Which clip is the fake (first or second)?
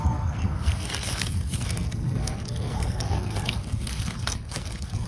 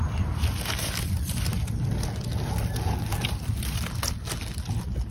first